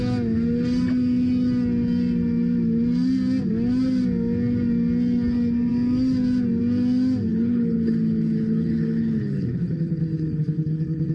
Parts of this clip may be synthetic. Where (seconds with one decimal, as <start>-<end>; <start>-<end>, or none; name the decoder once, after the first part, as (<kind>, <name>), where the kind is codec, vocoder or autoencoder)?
7.3-11.1 (codec, HILCodec)